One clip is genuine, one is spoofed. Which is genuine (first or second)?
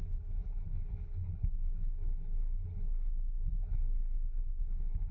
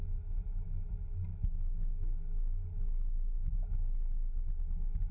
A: second